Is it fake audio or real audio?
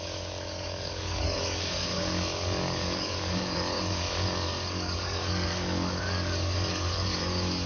fake